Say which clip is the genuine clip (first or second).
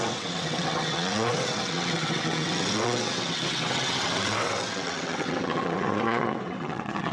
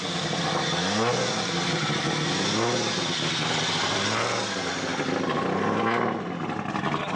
second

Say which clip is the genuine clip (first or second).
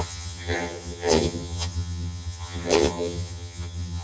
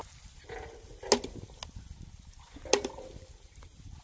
second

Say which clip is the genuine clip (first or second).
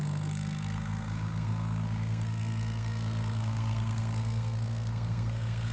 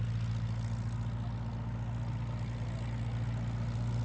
second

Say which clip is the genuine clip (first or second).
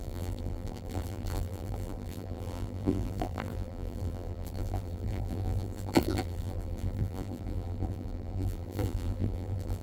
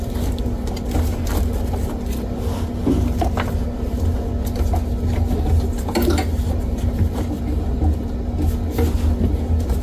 second